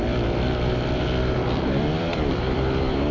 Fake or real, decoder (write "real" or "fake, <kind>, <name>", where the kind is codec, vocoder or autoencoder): fake, vocoder, BigVGAN v2